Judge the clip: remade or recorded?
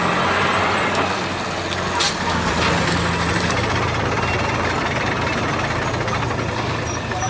recorded